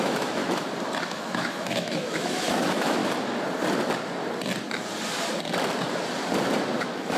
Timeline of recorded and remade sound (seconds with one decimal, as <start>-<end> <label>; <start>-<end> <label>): 0.0-0.4 remade; 0.4-1.0 recorded; 1.0-3.0 remade; 3.0-6.8 recorded; 6.8-7.2 remade